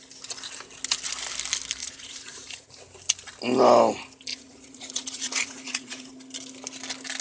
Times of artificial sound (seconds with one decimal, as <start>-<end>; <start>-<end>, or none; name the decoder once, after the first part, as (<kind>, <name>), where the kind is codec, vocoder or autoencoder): 1.8-2.7 (vocoder, Vocos); 4.3-6.1

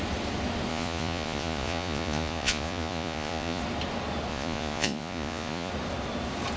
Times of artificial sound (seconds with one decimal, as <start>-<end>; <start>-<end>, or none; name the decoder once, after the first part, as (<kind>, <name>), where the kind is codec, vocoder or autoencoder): 0.7-3.6 (vocoder, Vocos); 4.3-5.7

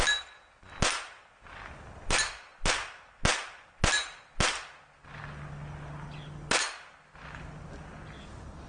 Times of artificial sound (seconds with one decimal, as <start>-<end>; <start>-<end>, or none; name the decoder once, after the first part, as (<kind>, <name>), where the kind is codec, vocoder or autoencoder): none

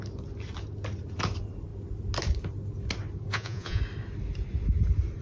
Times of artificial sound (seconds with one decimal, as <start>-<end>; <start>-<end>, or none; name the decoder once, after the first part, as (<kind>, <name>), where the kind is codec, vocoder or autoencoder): 3.3-3.8 (vocoder, Vocos)

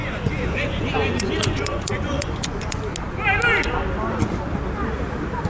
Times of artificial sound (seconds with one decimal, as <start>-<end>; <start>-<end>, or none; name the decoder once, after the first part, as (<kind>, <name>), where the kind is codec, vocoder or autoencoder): 0.0-2.8 (vocoder, Vocos)

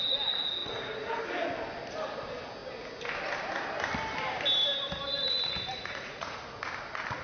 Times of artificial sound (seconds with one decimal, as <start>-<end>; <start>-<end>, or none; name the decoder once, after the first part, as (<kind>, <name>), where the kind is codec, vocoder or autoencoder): 0.6-1.2 (vocoder, Vocos); 5.7-6.6

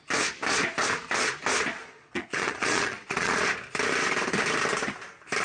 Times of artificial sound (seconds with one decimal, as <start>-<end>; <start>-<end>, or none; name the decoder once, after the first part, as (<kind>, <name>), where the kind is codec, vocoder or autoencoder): 1.8-3.3 (vocoder, Vocos)